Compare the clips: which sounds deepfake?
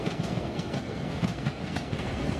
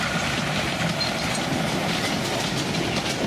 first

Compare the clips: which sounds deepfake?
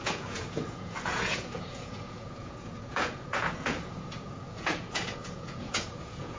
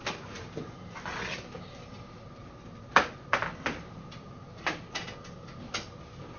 first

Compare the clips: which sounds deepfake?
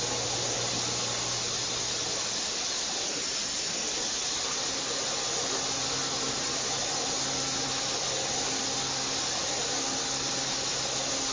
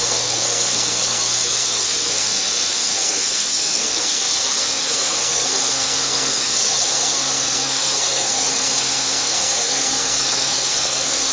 second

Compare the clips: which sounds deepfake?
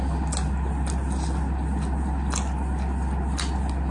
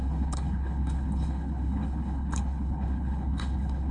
second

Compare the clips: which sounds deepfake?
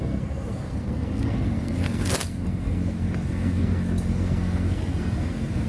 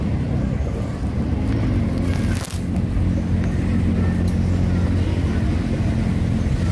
first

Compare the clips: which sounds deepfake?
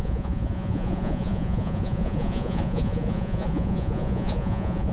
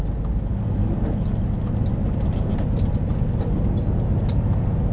first